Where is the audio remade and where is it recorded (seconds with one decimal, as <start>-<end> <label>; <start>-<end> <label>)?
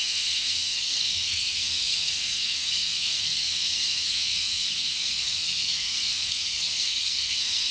0.0-7.7 remade